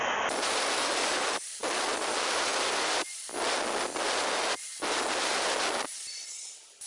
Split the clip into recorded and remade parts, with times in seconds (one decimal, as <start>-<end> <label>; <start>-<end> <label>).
0.0-6.9 recorded